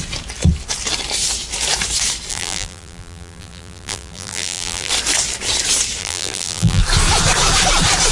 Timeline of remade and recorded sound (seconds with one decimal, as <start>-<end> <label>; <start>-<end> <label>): 0.0-2.3 recorded; 2.3-4.9 remade; 4.9-6.0 recorded; 6.0-6.8 remade; 6.8-8.1 recorded